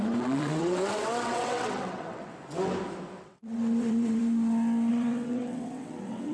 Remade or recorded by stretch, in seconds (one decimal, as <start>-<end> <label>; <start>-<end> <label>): 0.0-2.3 remade; 2.3-3.2 recorded; 3.2-4.2 remade; 4.2-4.9 recorded; 4.9-6.3 remade